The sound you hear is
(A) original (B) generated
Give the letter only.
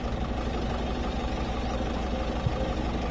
A